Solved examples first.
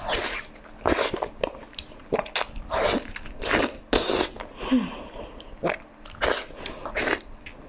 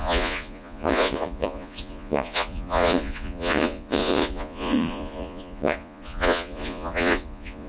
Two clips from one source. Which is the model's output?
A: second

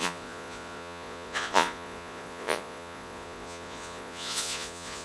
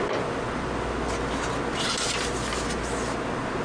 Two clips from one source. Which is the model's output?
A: first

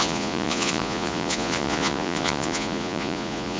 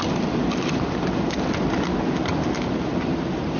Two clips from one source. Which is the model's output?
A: first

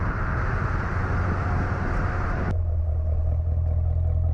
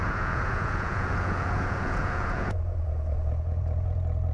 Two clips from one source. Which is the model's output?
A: second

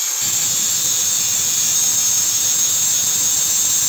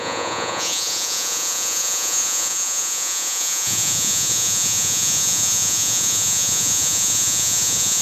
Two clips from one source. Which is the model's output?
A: second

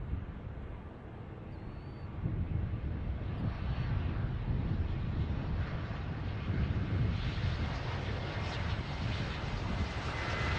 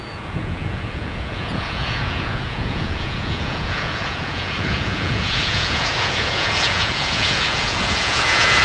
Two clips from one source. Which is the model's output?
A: second